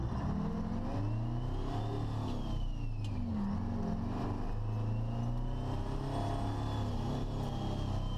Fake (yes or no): no